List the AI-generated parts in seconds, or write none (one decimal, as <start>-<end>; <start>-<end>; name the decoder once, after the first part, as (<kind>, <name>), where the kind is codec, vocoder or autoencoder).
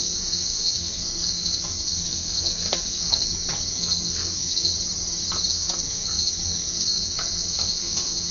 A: 0.0-4.7 (codec, SNAC); 5.5-8.3